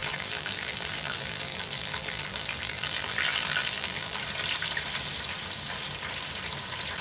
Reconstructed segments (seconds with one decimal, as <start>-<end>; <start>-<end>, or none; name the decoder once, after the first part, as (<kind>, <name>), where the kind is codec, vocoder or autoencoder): 0.0-4.2 (vocoder, BigVGAN v2)